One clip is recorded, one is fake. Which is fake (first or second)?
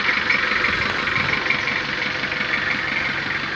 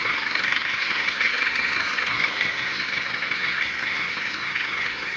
second